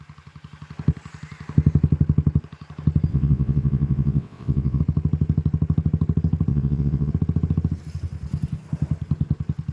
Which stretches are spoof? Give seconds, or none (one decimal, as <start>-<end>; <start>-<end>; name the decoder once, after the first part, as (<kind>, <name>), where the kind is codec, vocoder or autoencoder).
3.1-4.8 (vocoder, WaveNeXt); 6.5-7.1